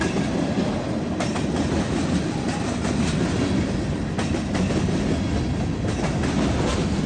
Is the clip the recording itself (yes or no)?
yes